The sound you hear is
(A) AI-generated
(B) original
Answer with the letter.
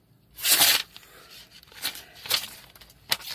B